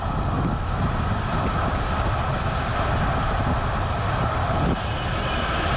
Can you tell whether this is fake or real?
real